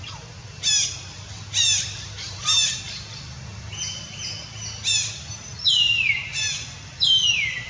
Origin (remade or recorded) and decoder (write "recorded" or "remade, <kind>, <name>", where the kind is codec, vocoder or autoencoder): recorded